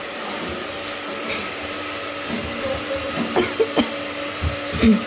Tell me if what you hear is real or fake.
real